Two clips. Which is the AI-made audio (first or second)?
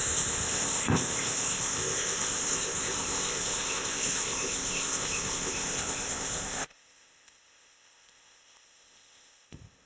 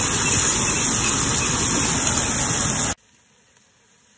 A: first